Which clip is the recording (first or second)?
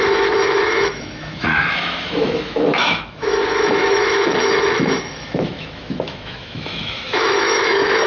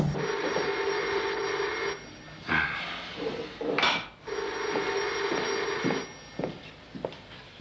second